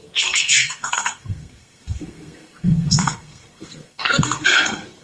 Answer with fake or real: fake